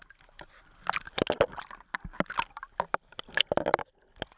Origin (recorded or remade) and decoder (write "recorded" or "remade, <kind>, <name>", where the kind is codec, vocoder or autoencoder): recorded